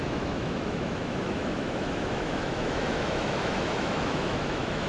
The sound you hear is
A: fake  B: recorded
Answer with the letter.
A